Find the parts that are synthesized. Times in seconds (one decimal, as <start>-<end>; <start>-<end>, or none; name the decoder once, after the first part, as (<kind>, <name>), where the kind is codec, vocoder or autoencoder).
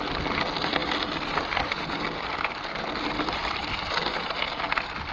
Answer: none